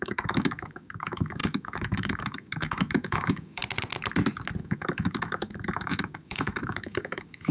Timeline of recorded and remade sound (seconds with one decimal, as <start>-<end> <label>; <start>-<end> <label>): 0.0-3.6 remade; 3.6-4.6 recorded; 4.6-7.5 remade